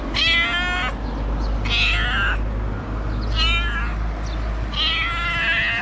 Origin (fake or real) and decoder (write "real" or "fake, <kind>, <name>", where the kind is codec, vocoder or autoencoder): real